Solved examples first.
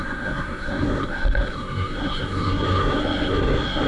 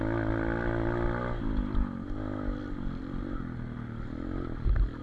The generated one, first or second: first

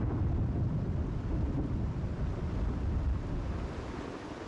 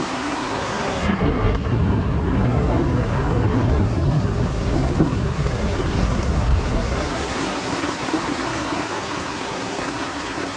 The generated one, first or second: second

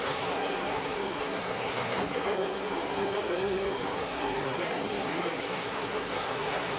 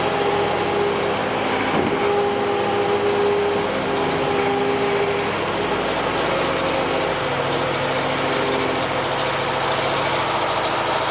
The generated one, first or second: first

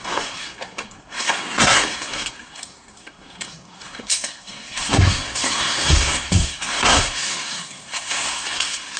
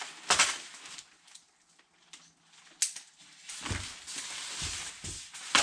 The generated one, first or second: first